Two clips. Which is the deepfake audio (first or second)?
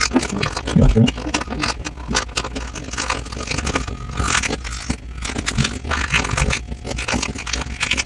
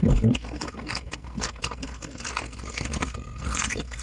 second